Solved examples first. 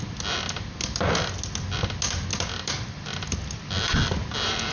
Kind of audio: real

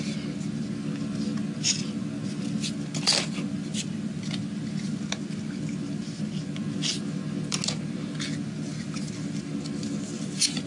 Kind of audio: real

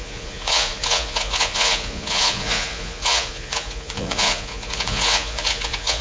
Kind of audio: fake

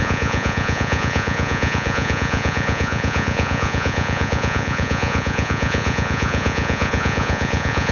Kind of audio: fake